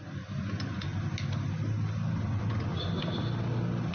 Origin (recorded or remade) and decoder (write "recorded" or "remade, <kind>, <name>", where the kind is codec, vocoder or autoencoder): recorded